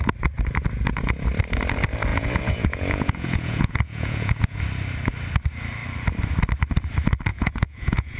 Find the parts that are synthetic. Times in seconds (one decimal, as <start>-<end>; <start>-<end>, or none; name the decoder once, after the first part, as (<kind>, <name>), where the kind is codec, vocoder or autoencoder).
2.1-4.6 (vocoder, Vocos); 7.3-8.2